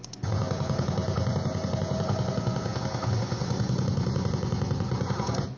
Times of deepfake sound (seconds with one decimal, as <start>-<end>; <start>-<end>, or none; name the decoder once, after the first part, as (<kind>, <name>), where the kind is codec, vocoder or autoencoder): 0.0-5.6 (vocoder, Vocos)